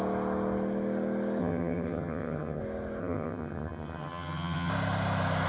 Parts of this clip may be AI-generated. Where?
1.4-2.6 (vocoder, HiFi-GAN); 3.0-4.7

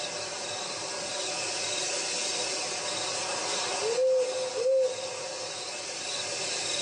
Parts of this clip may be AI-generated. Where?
none

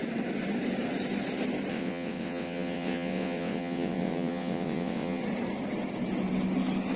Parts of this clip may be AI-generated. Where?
1.7-5.2 (vocoder, WaveNeXt)

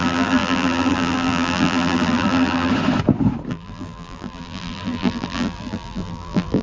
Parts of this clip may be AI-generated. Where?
0.0-2.7 (vocoder, BigVGAN v2); 3.5-6.6